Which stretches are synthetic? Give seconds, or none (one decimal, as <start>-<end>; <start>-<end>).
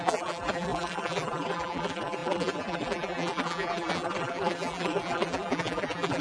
0.0-6.2